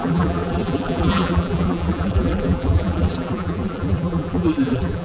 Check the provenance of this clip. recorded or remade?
remade